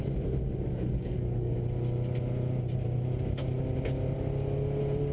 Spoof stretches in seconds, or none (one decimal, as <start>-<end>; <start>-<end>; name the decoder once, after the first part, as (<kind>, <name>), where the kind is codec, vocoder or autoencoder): 0.7-1.6 (codec, DAC)